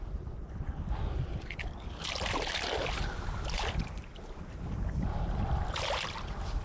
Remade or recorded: recorded